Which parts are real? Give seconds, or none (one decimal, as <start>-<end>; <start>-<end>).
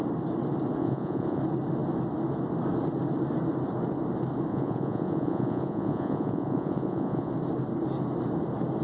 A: 0.0-0.8; 1.4-4.5; 7.3-8.8